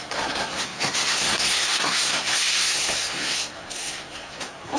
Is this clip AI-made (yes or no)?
yes